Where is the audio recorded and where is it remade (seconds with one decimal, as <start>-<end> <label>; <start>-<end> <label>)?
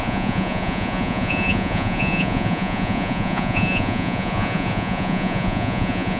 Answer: 0.0-6.2 remade